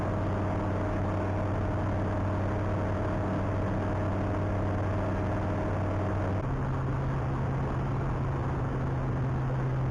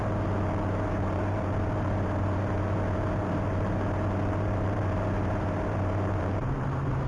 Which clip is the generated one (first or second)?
second